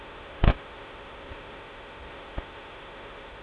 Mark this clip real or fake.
fake